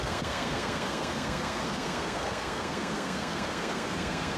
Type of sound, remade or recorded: remade